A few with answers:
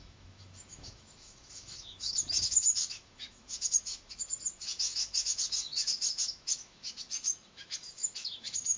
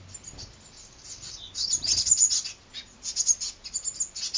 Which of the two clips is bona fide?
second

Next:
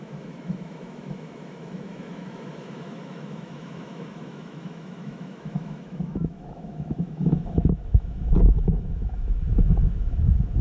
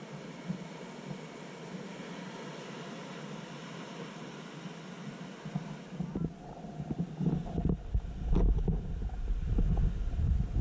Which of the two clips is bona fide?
second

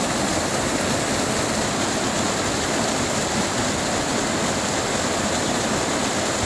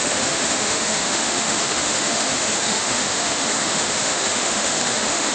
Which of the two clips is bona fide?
first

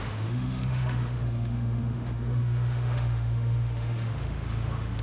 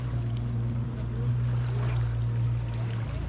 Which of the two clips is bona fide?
second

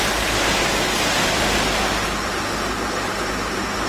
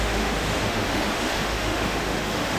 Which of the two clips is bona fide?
first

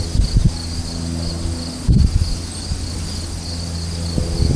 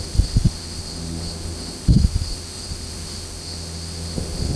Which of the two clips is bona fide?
first